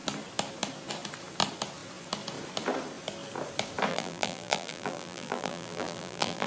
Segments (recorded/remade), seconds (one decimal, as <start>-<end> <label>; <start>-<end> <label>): 0.0-3.9 recorded; 3.9-6.5 remade